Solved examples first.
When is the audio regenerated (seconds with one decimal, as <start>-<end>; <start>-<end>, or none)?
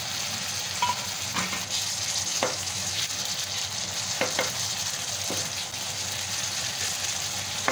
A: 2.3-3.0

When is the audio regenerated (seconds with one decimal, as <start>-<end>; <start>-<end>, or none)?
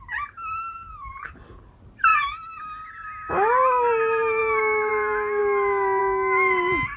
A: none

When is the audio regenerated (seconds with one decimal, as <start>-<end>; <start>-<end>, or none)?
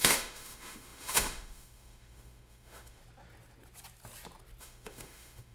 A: 0.0-3.0; 4.6-5.5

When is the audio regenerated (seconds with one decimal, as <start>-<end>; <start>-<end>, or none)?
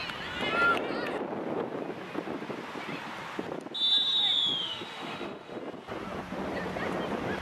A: 4.6-5.6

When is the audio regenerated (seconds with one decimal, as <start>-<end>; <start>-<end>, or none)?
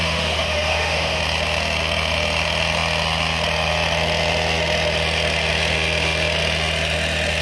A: 0.0-1.2